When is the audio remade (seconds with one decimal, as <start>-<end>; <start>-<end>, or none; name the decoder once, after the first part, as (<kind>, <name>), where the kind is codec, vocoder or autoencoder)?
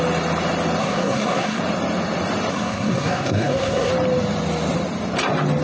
0.8-1.6 (codec, SNAC); 2.5-3.9